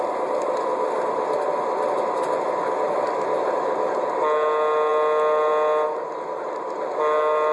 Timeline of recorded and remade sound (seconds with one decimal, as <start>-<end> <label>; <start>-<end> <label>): 0.0-7.5 recorded